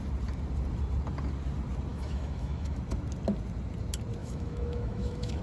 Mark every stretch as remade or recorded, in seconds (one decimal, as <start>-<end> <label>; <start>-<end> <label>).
0.0-1.9 recorded; 1.9-2.8 remade; 2.8-4.2 recorded; 4.2-5.4 remade